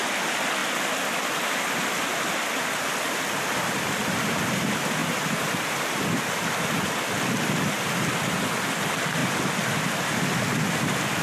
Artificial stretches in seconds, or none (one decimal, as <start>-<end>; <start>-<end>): none